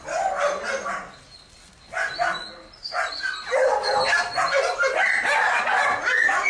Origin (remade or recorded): recorded